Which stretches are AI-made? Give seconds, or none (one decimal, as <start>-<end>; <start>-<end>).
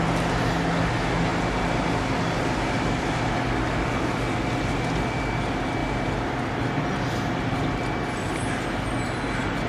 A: none